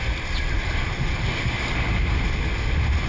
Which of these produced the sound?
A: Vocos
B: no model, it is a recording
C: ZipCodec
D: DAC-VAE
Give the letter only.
B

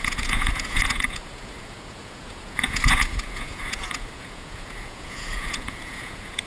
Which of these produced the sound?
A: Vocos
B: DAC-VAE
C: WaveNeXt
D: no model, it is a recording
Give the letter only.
A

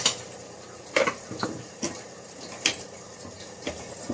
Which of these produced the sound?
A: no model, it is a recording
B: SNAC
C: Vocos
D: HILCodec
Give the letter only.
A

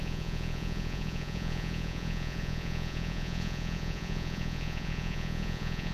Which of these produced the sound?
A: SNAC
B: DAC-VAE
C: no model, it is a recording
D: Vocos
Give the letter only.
D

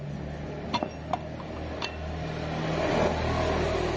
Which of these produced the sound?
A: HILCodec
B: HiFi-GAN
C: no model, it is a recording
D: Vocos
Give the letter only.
C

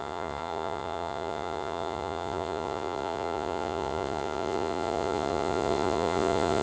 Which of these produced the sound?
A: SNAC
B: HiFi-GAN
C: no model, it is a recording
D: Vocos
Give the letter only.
D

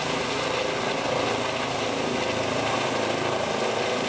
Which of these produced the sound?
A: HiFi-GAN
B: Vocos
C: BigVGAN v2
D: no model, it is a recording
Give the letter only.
D